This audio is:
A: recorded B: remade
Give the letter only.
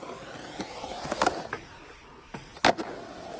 A